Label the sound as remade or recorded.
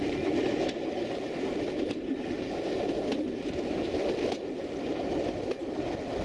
recorded